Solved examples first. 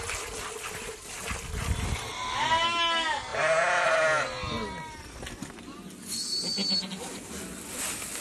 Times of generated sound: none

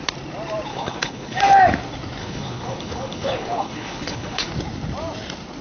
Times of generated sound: 0.7-1.4 (codec, HILCodec); 2.2-4.5

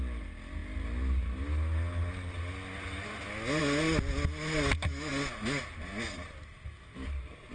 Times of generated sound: none

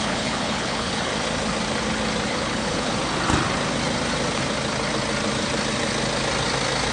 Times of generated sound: 0.0-1.1 (codec, HILCodec); 2.3-2.9

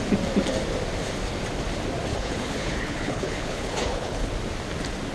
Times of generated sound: 2.1-4.3 (codec, HILCodec)